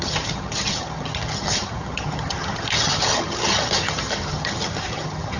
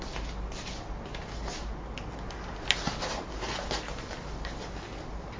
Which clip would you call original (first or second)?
second